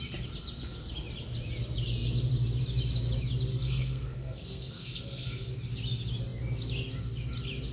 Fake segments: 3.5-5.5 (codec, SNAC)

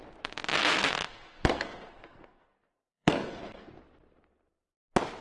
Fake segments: 0.6-3.7 (codec, SNAC)

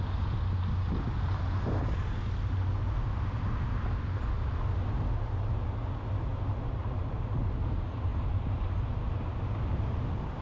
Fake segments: none

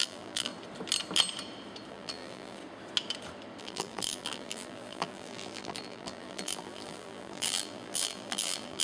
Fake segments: 0.0-0.5 (vocoder, BigVGAN v2); 1.9-2.6; 3.6-8.8

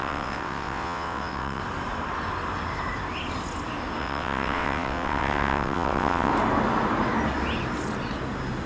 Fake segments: 0.0-1.6 (vocoder, WaveNeXt); 4.0-6.3

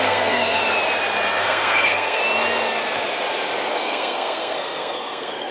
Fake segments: 0.0-0.6 (codec, SNAC); 1.4-2.2; 3.7-5.5

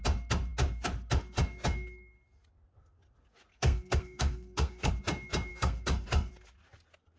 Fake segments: 3.5-4.9 (codec, SNAC); 5.5-6.3